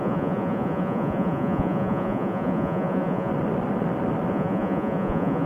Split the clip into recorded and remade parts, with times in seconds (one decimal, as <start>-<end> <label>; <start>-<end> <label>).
0.0-3.3 remade; 3.3-4.3 recorded; 4.3-5.5 remade